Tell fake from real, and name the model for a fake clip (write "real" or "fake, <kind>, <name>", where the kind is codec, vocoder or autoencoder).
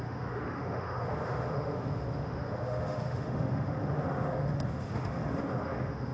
fake, autoencoder, DAC-VAE